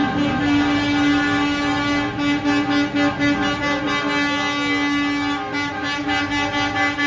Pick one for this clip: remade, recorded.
recorded